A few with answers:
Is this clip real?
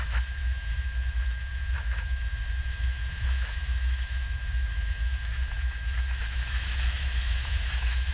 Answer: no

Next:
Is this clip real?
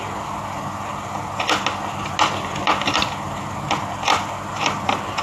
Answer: yes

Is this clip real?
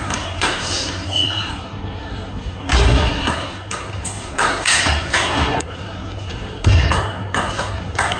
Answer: no